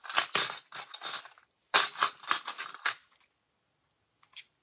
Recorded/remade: recorded